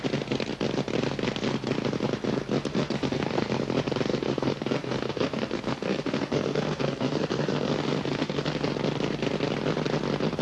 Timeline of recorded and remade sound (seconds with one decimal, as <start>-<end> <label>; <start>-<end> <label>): 0.0-2.7 recorded; 2.7-3.5 remade; 3.5-4.1 recorded; 4.1-8.7 remade; 8.7-10.4 recorded